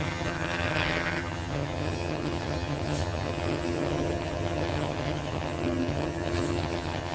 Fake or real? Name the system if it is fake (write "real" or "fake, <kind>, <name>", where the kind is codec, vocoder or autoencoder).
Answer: fake, vocoder, HiFi-GAN